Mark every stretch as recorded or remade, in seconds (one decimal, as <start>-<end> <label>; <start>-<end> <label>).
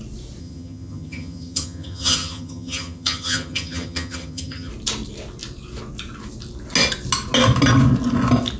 0.0-0.4 recorded; 0.4-4.7 remade; 4.7-8.6 recorded